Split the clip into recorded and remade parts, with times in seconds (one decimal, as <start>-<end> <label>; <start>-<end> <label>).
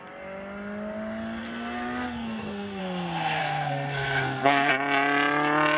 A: 0.0-1.4 recorded; 1.4-2.8 remade; 2.8-3.4 recorded; 3.4-4.7 remade; 4.7-5.8 recorded